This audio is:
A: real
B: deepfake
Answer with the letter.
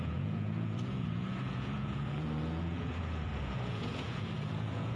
B